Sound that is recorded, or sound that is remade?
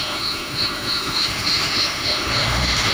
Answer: remade